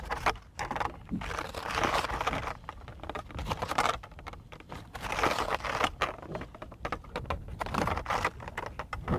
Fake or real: real